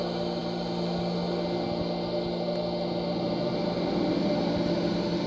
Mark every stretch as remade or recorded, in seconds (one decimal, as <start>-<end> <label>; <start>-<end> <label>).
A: 0.0-5.3 recorded